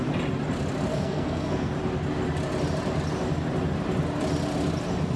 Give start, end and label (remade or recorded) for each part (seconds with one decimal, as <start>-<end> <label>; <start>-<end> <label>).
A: 0.0-0.9 recorded; 0.9-1.7 remade; 1.7-5.2 recorded